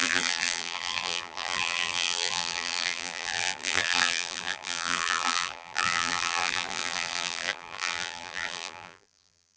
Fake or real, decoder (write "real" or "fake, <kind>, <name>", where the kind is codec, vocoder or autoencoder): fake, vocoder, BigVGAN v2